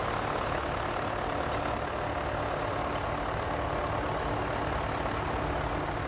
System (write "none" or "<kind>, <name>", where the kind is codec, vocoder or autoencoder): none